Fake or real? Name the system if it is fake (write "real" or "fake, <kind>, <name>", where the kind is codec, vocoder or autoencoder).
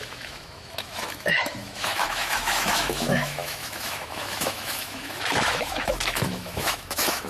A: fake, autoencoder, DAC-VAE